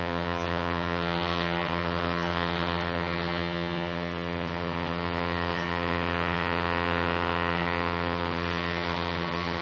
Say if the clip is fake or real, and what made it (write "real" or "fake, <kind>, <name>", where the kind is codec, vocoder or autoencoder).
fake, vocoder, HiFi-GAN